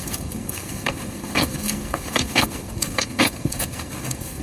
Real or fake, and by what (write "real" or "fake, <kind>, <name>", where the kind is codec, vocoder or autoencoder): fake, codec, SNAC